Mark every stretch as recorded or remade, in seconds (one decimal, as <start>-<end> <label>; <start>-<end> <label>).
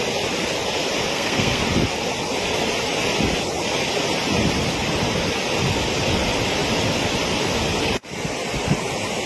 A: 0.0-1.1 recorded; 1.1-1.6 remade; 1.6-9.3 recorded